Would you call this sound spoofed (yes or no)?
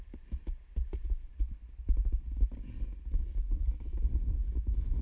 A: no